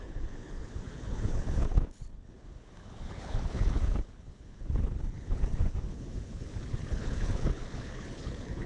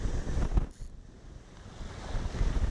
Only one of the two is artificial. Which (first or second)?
first